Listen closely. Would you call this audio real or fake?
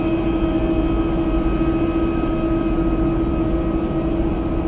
real